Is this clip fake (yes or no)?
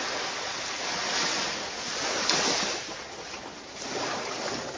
no